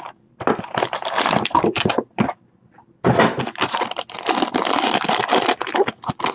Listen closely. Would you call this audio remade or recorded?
recorded